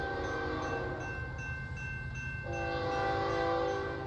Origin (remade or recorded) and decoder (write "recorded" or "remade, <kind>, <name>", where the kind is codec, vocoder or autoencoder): recorded